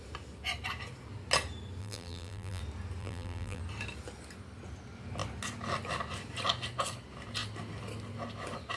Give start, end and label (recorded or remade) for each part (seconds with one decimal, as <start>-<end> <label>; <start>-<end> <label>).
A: 0.0-1.8 recorded; 1.8-2.6 remade; 2.6-3.0 recorded; 3.0-3.6 remade; 3.6-8.8 recorded